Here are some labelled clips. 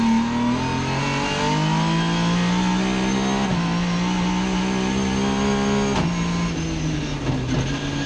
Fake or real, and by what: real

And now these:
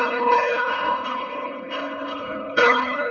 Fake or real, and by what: fake, codec, HILCodec